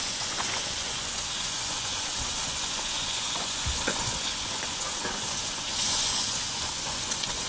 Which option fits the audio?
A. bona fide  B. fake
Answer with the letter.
B